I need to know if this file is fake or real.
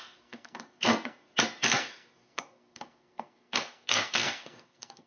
fake